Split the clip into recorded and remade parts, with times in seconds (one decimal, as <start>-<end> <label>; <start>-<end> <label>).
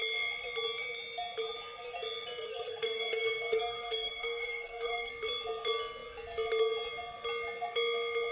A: 0.0-2.5 recorded; 2.5-5.1 remade; 5.1-8.3 recorded